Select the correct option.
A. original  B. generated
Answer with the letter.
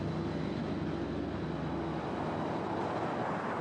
A